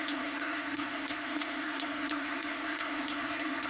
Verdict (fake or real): fake